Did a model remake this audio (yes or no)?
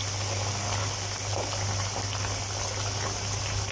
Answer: no